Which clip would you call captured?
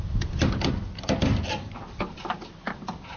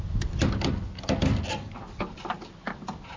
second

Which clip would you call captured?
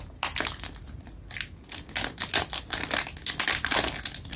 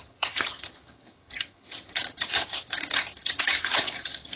first